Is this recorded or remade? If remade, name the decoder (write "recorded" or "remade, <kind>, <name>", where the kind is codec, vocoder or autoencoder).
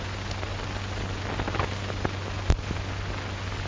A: recorded